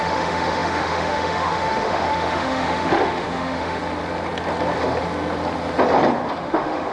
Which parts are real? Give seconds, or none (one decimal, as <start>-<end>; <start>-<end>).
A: 3.8-6.4